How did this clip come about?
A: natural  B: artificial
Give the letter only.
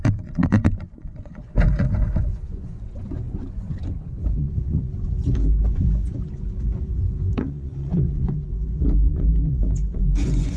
B